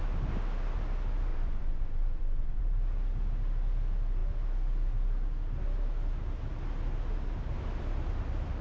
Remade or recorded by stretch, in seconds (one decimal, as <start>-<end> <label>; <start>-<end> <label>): 0.0-1.3 recorded; 1.3-2.6 remade; 2.6-8.6 recorded